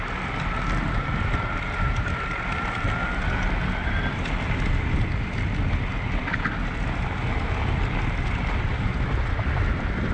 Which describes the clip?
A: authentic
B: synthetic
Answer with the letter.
A